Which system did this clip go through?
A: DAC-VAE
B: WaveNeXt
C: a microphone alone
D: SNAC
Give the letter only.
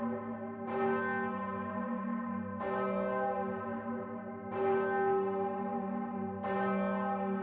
C